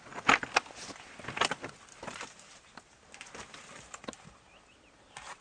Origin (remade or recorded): recorded